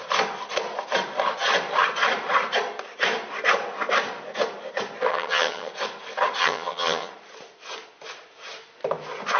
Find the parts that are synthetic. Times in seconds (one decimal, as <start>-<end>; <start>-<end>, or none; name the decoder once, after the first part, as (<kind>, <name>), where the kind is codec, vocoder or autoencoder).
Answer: 5.1-5.7 (vocoder, HiFi-GAN); 6.4-7.1